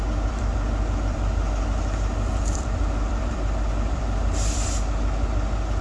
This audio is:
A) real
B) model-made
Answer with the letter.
B